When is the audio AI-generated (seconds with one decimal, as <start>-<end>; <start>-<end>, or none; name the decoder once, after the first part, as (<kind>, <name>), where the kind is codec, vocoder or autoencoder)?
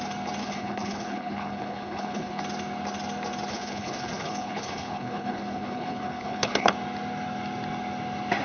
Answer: 0.4-2.4 (codec, HILCodec); 3.5-6.7